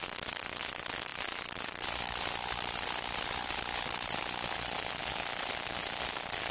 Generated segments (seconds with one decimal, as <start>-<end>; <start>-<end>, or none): none